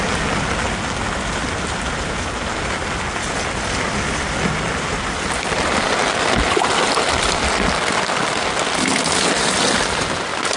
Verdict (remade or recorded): recorded